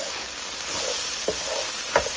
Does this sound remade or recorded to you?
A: recorded